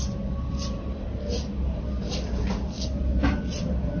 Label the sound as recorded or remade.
recorded